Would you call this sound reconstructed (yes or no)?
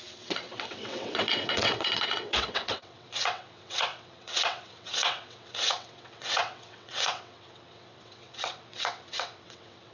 yes